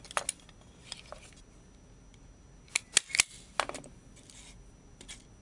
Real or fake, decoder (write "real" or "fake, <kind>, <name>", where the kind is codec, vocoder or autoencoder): real